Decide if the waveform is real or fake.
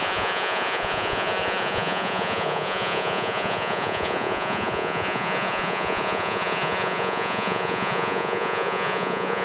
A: fake